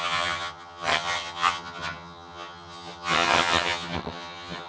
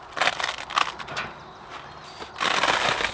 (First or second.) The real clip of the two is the second